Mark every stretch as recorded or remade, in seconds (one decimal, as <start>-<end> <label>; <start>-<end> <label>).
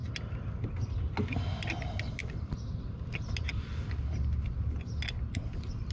0.0-5.9 recorded